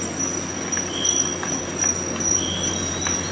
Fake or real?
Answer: real